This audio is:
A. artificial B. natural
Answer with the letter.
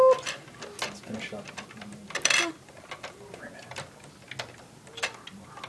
B